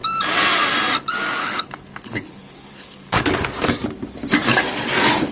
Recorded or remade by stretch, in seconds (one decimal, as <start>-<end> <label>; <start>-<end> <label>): 0.0-1.4 recorded; 1.4-3.2 remade; 3.2-5.3 recorded